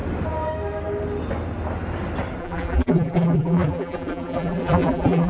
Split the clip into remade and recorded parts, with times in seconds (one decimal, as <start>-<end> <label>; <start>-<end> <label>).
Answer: 0.0-2.4 recorded; 2.4-5.3 remade